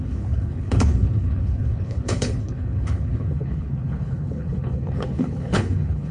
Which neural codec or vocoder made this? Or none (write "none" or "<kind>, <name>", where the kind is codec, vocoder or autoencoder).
codec, HILCodec